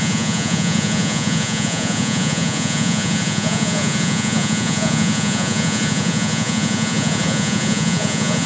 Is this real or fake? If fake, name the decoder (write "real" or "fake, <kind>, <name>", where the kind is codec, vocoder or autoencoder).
fake, vocoder, Vocos